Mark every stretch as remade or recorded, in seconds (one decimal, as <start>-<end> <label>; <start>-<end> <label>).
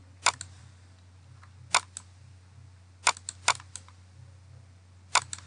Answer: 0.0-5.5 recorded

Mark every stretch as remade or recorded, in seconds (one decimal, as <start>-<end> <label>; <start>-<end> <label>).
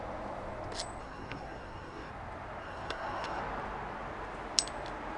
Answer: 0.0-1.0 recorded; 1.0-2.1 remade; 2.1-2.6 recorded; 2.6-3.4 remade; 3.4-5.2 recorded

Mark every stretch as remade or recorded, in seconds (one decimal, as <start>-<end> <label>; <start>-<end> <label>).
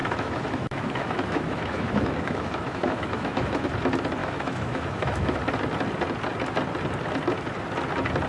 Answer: 0.0-3.7 remade; 3.7-4.2 recorded; 4.2-5.4 remade; 5.4-8.3 recorded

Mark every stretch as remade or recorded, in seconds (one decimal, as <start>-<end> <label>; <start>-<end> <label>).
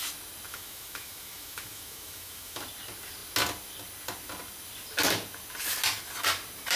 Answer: 0.0-0.5 recorded; 0.5-2.6 remade; 2.6-6.8 recorded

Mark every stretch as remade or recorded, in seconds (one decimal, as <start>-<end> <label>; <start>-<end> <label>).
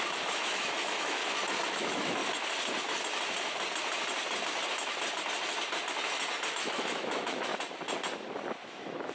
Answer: 0.0-1.2 remade; 1.2-1.7 recorded; 1.7-2.2 remade; 2.2-6.5 recorded; 6.5-7.5 remade; 7.5-8.7 recorded; 8.7-9.1 remade